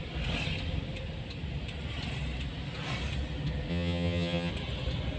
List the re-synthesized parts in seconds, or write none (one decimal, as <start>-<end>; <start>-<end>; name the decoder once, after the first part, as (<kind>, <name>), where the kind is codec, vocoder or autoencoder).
3.7-4.5 (vocoder, HiFi-GAN)